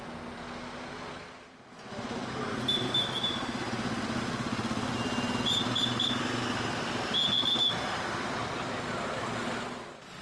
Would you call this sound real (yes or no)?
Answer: yes